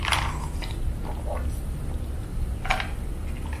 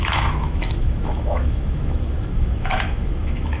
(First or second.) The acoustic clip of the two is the first